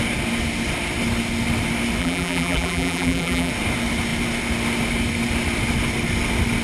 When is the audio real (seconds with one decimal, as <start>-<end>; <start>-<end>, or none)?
0.0-2.0; 3.5-6.6